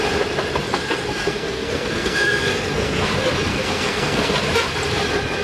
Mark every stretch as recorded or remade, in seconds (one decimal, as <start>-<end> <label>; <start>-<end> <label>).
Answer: 0.0-0.7 recorded; 0.7-3.1 remade; 3.1-3.5 recorded; 3.5-4.4 remade; 4.4-5.4 recorded